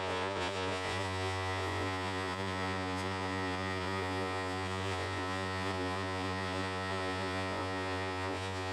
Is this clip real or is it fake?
fake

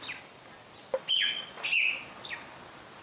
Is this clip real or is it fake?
real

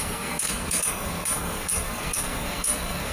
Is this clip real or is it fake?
fake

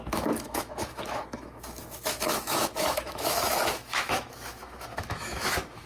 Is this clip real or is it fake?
fake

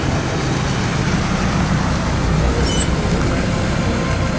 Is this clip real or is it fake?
real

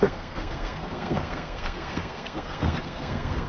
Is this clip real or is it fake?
fake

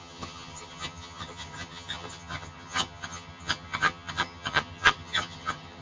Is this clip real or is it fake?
fake